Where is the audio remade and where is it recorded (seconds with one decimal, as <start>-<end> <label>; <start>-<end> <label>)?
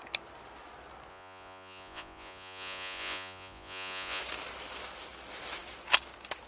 0.0-1.1 recorded; 1.1-4.2 remade; 4.2-6.5 recorded